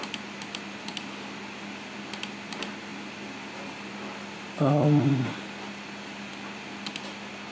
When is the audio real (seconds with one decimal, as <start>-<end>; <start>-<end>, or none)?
0.0-7.5